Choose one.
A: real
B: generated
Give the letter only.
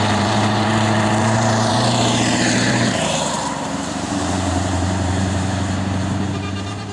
B